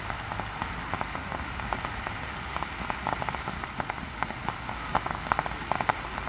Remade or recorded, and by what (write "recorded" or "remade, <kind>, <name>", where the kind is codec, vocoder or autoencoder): recorded